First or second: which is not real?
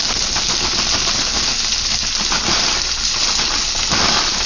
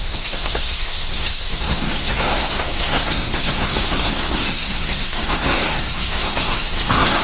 second